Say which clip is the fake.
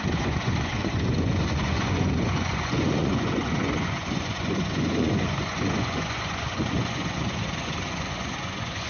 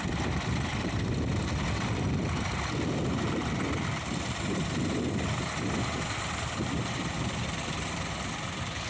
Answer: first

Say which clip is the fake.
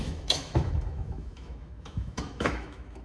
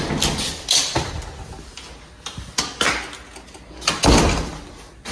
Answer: first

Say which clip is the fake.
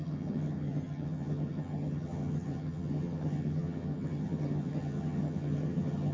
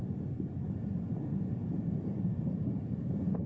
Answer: first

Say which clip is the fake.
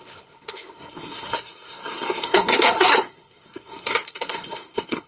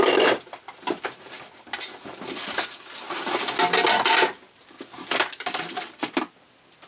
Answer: first